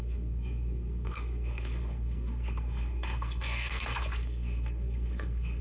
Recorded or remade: remade